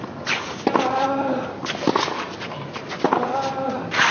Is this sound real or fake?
real